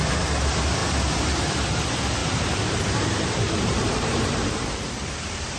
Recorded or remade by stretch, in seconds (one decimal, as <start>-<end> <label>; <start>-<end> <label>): 0.0-2.2 recorded; 2.2-5.6 remade